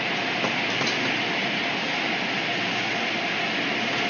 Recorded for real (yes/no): yes